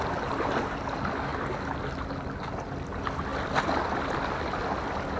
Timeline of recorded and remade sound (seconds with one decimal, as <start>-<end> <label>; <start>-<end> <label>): 0.0-5.2 recorded